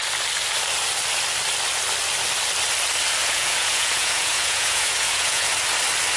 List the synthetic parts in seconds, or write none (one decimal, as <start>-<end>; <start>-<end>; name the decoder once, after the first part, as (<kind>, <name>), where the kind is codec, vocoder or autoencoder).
3.2-5.5 (vocoder, Vocos)

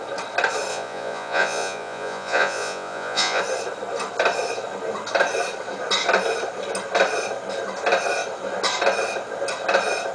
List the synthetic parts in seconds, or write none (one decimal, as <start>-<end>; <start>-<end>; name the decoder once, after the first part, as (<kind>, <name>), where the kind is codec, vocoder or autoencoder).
0.7-3.4 (vocoder, Vocos)

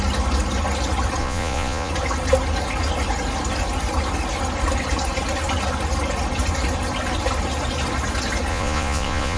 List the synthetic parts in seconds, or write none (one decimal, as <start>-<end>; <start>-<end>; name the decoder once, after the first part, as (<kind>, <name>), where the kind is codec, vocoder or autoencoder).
1.2-1.9 (vocoder, Vocos); 8.5-9.4

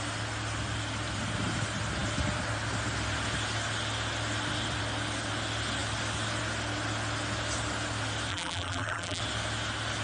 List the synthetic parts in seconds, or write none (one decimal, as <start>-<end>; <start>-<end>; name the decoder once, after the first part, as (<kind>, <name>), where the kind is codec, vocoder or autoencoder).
8.3-9.2 (vocoder, BigVGAN v2)

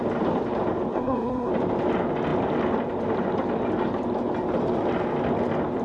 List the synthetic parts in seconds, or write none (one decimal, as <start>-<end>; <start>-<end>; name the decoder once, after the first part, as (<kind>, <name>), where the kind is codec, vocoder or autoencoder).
0.9-1.5 (codec, SNAC)

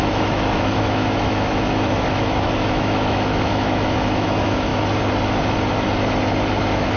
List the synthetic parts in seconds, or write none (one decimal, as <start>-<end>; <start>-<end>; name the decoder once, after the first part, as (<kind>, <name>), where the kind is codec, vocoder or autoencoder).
0.0-4.7 (autoencoder, DAC-VAE); 6.5-7.0

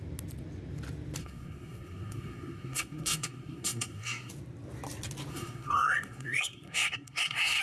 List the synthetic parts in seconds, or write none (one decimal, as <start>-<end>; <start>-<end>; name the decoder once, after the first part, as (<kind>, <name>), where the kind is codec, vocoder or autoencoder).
1.2-4.3 (codec, SNAC); 5.3-7.6